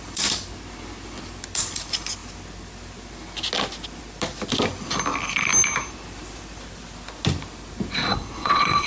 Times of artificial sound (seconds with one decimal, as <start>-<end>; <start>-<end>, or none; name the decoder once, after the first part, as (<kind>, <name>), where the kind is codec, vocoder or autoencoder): 8.1-8.9 (vocoder, WaveNeXt)